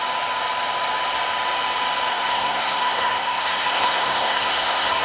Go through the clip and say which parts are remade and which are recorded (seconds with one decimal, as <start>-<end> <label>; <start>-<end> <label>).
0.0-2.1 recorded; 2.1-5.0 remade